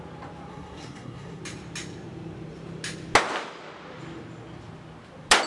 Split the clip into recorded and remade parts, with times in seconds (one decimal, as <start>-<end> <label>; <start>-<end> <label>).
0.0-0.5 recorded; 0.5-1.4 remade; 1.4-5.5 recorded